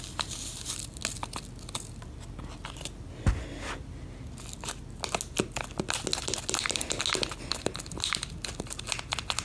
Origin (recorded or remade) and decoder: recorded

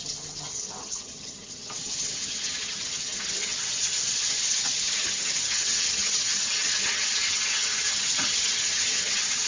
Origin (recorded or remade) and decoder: remade, vocoder, HiFi-GAN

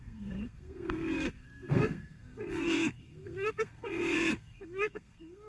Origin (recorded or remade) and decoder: remade, codec, SNAC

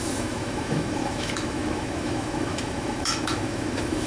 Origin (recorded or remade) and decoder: remade, autoencoder, DAC-VAE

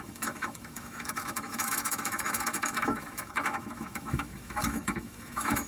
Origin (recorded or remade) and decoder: remade, autoencoder, DAC-VAE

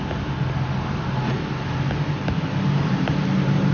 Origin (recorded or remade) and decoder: recorded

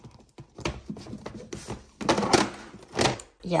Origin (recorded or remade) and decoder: recorded